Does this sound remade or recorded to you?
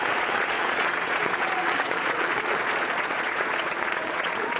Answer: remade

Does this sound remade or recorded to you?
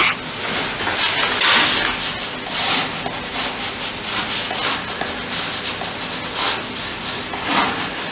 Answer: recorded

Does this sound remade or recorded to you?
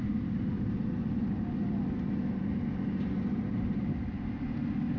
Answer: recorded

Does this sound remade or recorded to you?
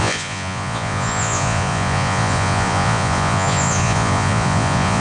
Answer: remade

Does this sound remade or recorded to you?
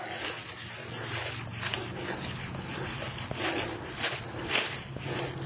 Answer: recorded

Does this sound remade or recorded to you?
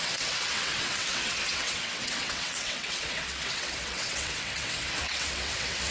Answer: remade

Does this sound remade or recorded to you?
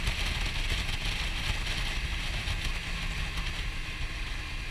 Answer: recorded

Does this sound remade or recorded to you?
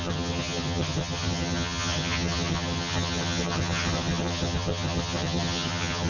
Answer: remade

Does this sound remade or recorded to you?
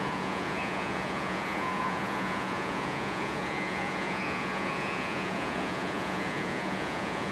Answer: remade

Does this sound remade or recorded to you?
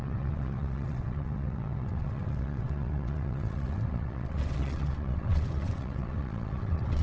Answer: remade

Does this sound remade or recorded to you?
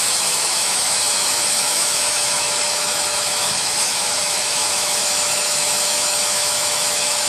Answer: remade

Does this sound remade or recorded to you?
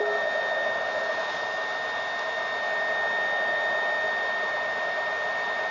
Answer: recorded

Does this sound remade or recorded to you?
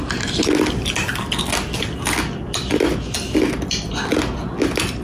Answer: recorded